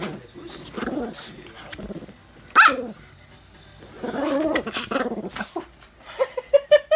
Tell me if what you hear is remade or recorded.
recorded